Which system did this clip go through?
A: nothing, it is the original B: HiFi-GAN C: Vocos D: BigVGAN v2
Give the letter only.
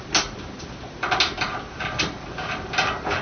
A